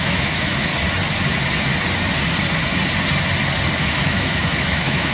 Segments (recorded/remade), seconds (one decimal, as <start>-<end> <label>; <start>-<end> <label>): 0.0-0.7 remade; 0.7-3.8 recorded; 3.8-5.1 remade

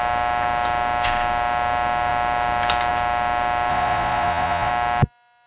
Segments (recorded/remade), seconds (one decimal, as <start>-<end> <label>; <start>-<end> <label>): 0.0-3.7 recorded; 3.7-4.7 remade; 4.7-5.5 recorded

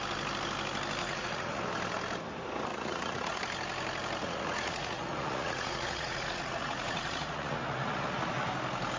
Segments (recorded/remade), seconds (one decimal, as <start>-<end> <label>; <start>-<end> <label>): 0.0-1.0 recorded; 1.0-1.6 remade; 1.6-2.7 recorded; 2.7-3.4 remade; 3.4-4.2 recorded; 4.2-8.5 remade; 8.5-9.0 recorded

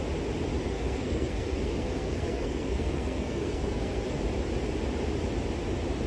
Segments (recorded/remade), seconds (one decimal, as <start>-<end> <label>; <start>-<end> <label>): 0.0-0.6 recorded; 0.6-4.2 remade; 4.2-6.1 recorded

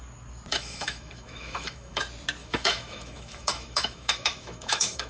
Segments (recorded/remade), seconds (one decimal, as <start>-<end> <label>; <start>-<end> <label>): 0.0-0.5 recorded; 0.5-2.0 remade; 2.0-2.4 recorded; 2.4-5.1 remade

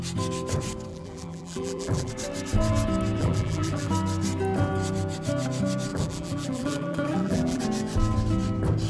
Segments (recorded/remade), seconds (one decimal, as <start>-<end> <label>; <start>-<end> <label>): 0.0-0.9 recorded; 0.9-2.1 remade; 2.1-3.2 recorded; 3.2-3.9 remade; 3.9-5.9 recorded; 5.9-7.6 remade; 7.6-8.9 recorded

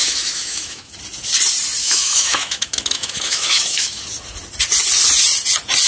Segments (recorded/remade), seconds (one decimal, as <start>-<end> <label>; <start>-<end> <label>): 0.0-0.9 remade; 0.9-1.8 recorded; 1.8-4.0 remade; 4.0-5.9 recorded

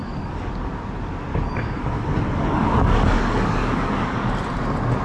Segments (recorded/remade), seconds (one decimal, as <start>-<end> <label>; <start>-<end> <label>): 0.0-0.5 remade; 0.5-1.3 recorded; 1.3-4.3 remade; 4.3-5.0 recorded